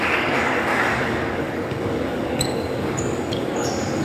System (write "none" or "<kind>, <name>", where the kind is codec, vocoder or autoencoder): codec, DAC